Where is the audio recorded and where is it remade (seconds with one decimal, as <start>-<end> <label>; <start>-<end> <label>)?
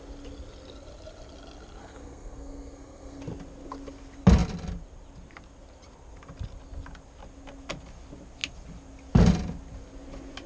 0.0-1.8 recorded; 1.8-3.2 remade; 3.2-10.5 recorded